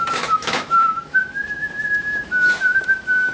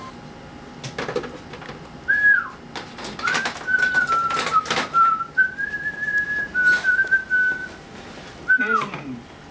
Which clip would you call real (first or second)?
second